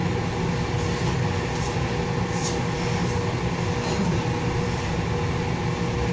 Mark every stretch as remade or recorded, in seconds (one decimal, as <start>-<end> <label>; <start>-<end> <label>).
0.0-6.1 recorded